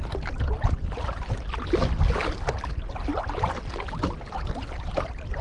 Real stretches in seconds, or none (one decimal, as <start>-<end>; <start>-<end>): 0.0-5.4